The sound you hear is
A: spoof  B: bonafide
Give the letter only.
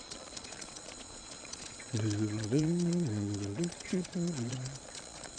A